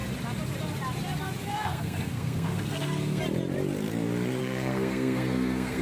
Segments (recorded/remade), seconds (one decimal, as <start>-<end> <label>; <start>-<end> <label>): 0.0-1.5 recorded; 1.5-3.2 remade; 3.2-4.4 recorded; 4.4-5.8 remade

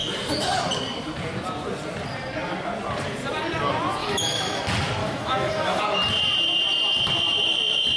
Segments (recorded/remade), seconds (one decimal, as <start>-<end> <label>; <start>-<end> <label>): 0.0-4.0 recorded; 4.0-4.6 remade; 4.6-5.0 recorded; 5.0-5.8 remade; 5.8-8.0 recorded

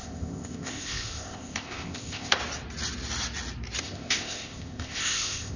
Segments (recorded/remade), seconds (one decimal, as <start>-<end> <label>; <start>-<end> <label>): 0.0-2.4 remade; 2.4-3.8 recorded; 3.8-5.6 remade

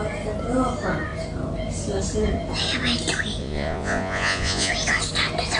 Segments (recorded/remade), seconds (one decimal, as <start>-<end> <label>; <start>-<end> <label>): 0.0-3.4 recorded; 3.4-4.7 remade; 4.7-5.6 recorded